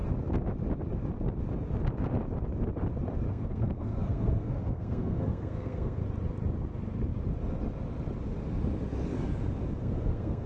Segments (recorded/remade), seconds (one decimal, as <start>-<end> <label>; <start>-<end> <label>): 0.0-3.3 recorded; 3.3-6.0 remade; 6.0-9.8 recorded; 9.8-10.5 remade